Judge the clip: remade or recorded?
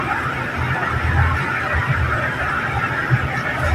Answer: recorded